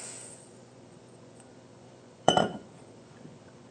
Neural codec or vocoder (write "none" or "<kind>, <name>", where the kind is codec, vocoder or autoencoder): vocoder, Vocos